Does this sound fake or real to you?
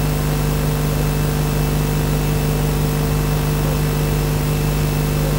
real